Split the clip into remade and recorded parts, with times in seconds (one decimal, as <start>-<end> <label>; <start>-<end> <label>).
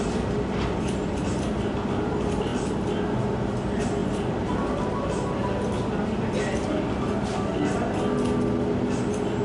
0.0-9.4 recorded